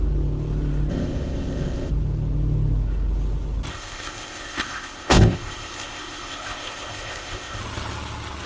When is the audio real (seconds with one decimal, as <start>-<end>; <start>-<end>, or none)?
0.0-0.9; 1.9-3.7; 7.6-8.5